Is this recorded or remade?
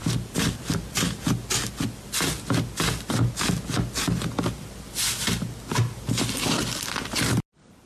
recorded